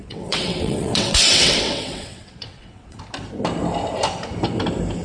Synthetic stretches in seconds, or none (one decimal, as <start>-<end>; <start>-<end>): 0.0-3.0